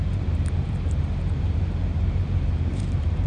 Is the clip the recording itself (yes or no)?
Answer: no